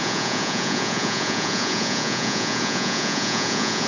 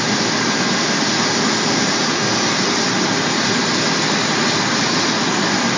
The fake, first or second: first